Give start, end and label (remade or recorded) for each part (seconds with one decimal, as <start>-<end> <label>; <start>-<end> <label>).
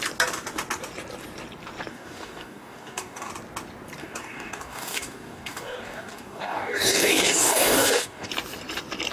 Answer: 0.0-1.9 recorded; 1.9-3.3 remade; 3.3-4.0 recorded; 4.0-8.3 remade; 8.3-9.1 recorded